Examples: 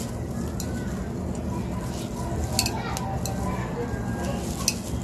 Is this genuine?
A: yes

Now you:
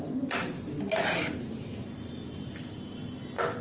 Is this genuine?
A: yes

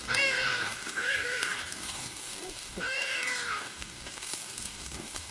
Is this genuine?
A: no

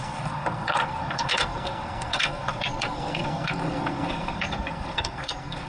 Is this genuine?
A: no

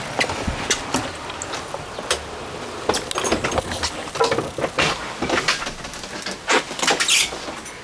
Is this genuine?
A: yes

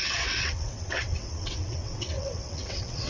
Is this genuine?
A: no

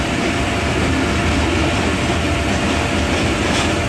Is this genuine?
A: yes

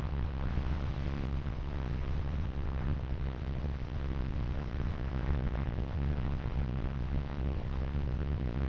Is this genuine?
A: no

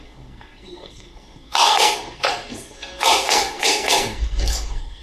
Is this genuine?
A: no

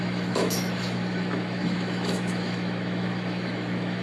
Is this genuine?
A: no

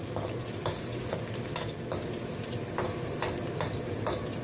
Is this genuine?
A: yes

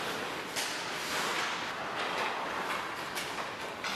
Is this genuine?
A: no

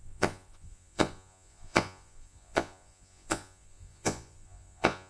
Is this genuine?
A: no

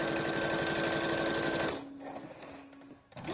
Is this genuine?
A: yes